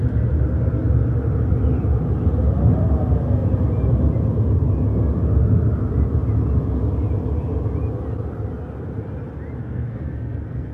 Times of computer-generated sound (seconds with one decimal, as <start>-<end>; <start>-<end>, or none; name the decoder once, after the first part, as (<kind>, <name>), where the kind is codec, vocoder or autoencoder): 9.6-10.7 (codec, SNAC)

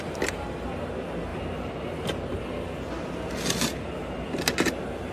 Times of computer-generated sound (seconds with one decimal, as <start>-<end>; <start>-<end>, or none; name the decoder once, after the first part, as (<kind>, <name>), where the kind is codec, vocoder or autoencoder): none

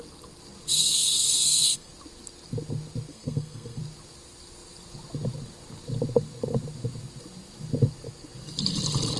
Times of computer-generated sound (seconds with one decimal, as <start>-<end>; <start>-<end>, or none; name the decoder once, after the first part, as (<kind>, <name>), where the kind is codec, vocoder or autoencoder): 0.7-1.9 (codec, SNAC); 3.1-3.8

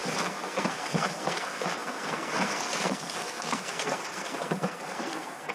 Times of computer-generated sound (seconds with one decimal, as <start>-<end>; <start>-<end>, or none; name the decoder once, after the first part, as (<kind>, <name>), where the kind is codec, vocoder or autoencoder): 0.0-5.5 (codec, SNAC)

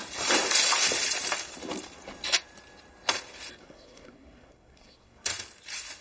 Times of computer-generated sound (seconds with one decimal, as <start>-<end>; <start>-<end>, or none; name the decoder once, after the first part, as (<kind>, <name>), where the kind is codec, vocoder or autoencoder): 3.6-5.3 (codec, SNAC)